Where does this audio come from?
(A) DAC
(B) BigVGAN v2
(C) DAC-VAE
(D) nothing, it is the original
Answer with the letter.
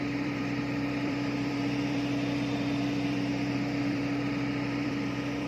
B